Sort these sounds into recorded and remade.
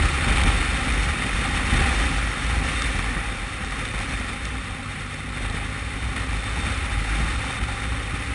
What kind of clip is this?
recorded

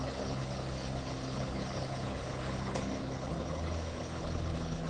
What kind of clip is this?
remade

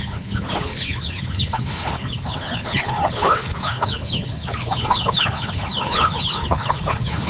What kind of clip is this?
remade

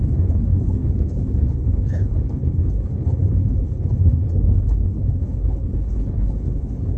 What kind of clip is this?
remade